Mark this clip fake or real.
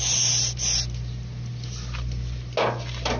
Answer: real